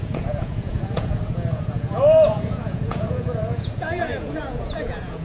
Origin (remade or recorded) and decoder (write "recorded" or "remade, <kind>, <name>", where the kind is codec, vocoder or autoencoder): remade, vocoder, Vocos